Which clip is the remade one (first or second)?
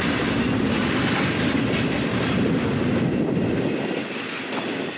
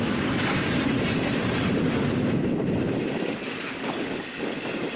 second